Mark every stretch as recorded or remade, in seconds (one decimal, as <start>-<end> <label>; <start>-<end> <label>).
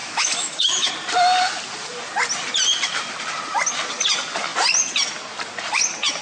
0.0-0.9 remade; 0.9-6.2 recorded